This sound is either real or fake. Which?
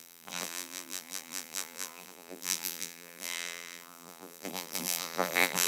fake